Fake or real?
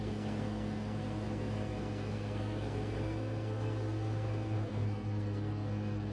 fake